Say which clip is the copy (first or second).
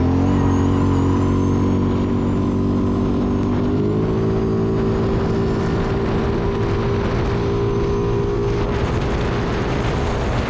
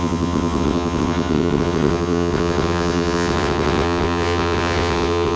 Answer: second